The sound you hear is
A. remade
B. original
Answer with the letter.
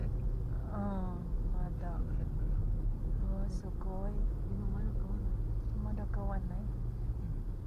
B